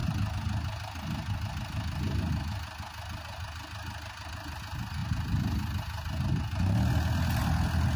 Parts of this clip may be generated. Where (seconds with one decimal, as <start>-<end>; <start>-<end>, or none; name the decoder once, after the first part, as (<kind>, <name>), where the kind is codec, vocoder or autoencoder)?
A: none